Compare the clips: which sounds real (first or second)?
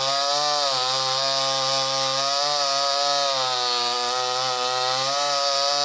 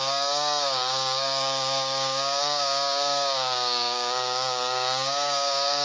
first